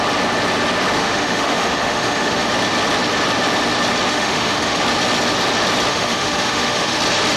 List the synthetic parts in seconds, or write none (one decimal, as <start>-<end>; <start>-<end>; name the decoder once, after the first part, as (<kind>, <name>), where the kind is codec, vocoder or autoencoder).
1.0-2.5 (autoencoder, DAC-VAE); 4.1-4.8; 5.9-7.0